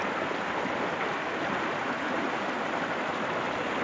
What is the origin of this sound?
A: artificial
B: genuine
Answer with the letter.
B